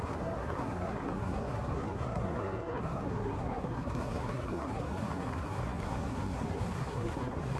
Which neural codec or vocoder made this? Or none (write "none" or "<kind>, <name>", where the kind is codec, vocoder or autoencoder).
codec, SNAC